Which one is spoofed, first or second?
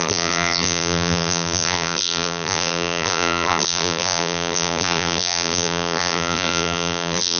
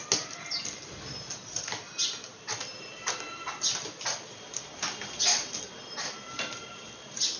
first